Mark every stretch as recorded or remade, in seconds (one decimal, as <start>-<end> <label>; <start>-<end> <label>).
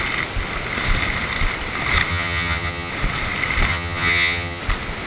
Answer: 0.0-2.1 recorded; 2.1-2.9 remade; 2.9-3.7 recorded; 3.7-4.6 remade; 4.6-5.1 recorded